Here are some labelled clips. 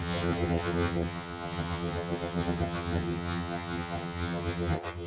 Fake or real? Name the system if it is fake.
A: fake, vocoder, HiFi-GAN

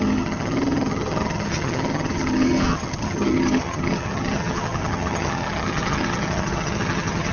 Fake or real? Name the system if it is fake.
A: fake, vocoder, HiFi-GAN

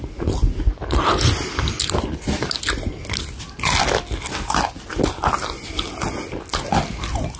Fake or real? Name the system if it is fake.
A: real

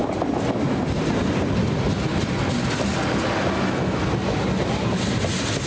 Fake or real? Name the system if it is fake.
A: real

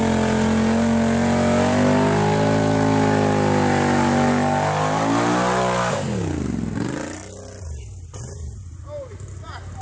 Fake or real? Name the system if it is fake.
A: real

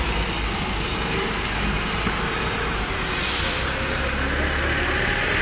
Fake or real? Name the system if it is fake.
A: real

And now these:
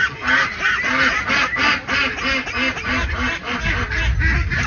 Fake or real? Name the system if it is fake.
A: real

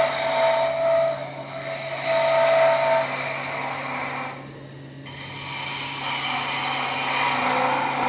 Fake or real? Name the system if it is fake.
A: real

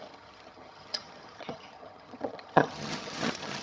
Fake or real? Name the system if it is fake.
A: fake, vocoder, HiFi-GAN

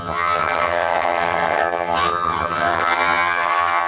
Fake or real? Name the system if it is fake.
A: fake, vocoder, HiFi-GAN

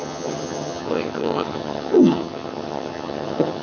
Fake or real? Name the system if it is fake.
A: fake, vocoder, HiFi-GAN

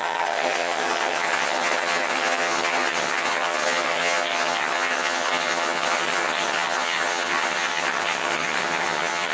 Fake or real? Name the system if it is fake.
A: fake, vocoder, HiFi-GAN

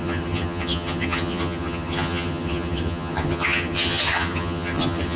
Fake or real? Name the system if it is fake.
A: fake, vocoder, HiFi-GAN